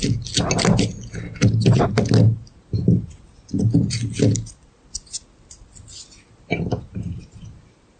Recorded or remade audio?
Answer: recorded